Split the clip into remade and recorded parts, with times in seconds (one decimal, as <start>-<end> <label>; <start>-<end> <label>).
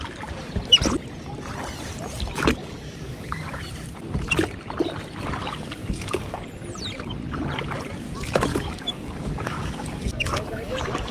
0.0-2.6 recorded; 2.6-3.6 remade; 3.6-5.8 recorded; 5.8-6.4 remade; 6.4-8.5 recorded; 8.5-11.1 remade